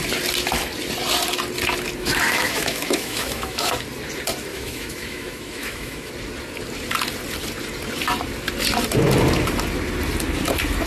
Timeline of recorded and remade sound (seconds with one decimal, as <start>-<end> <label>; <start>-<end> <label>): 0.0-2.0 recorded; 2.0-3.7 remade; 3.7-4.5 recorded; 4.5-6.1 remade; 6.1-10.9 recorded